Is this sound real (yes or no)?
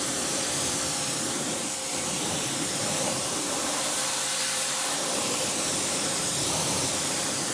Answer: no